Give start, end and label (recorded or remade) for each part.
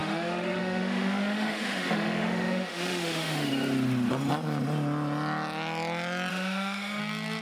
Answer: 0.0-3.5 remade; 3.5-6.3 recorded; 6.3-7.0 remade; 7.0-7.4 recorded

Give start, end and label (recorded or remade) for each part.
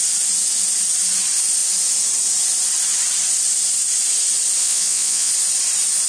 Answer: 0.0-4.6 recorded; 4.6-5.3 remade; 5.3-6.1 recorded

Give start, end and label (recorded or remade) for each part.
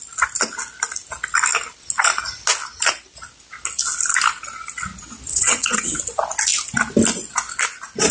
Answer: 0.0-5.3 recorded; 5.3-6.0 remade; 6.0-8.1 recorded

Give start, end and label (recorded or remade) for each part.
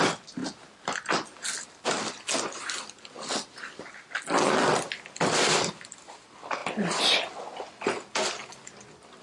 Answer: 0.0-9.2 recorded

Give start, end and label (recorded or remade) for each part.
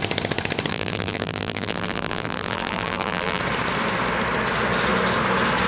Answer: 0.0-0.7 recorded; 0.7-3.4 remade; 3.4-5.7 recorded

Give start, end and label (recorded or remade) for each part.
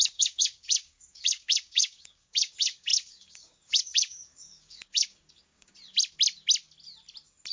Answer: 0.0-5.7 remade; 5.7-7.5 recorded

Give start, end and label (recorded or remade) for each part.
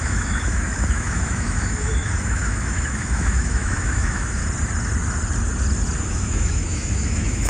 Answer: 0.0-4.4 remade; 4.4-6.0 recorded; 6.0-7.5 remade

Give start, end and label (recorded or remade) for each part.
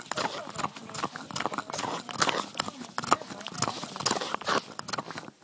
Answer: 0.0-5.4 recorded